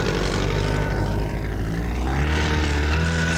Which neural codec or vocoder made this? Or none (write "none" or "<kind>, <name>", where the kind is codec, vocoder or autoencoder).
none